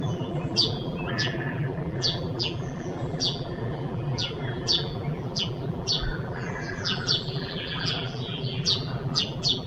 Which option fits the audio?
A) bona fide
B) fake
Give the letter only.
B